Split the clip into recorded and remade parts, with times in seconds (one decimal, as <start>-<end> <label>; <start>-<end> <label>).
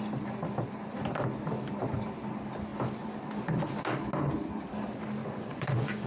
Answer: 0.0-5.2 recorded; 5.2-6.1 remade